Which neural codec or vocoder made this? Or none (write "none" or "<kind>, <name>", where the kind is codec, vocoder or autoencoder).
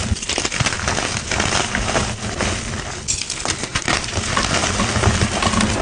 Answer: none